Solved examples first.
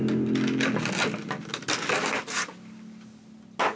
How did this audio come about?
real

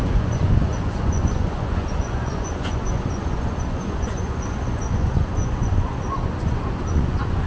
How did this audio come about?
fake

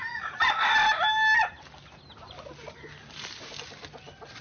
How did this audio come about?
real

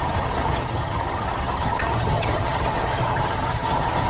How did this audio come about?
fake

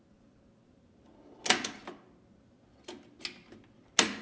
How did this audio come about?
real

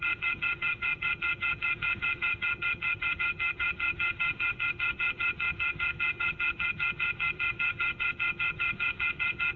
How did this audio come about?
fake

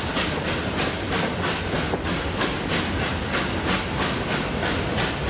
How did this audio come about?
real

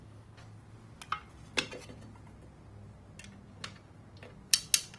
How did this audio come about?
real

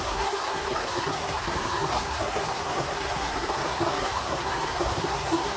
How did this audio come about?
fake